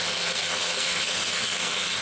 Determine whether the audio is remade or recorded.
remade